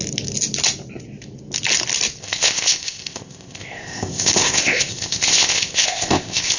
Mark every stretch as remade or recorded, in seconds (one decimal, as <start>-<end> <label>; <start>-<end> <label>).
0.0-2.2 recorded; 2.2-6.6 remade